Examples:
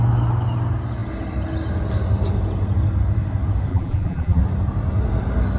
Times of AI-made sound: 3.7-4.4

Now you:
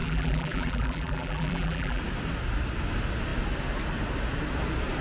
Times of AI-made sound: 0.0-2.0

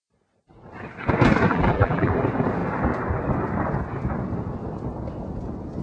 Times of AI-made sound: 1.5-2.1

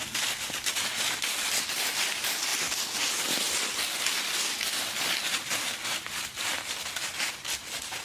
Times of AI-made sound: none

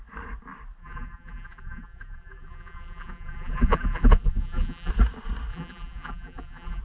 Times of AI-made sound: 0.8-4.9; 5.5-6.8